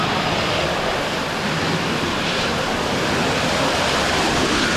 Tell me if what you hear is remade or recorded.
remade